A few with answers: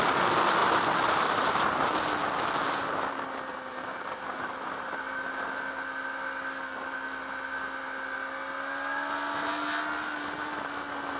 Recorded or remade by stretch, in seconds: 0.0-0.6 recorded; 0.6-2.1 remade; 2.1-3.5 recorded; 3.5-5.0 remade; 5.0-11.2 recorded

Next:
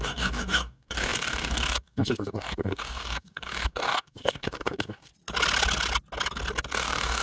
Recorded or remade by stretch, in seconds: 0.0-5.1 remade; 5.1-6.7 recorded; 6.7-7.2 remade

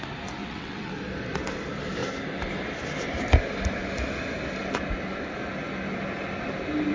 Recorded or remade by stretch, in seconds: 0.0-0.4 recorded; 0.4-0.9 remade; 0.9-6.9 recorded

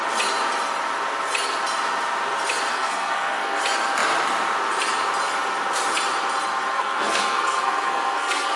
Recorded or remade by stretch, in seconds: 0.0-2.7 recorded; 2.7-3.6 remade; 3.6-6.7 recorded; 6.7-8.6 remade